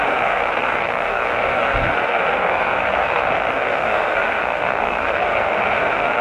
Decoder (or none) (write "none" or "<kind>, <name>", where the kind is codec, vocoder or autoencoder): codec, SNAC